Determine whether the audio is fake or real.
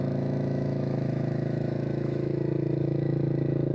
fake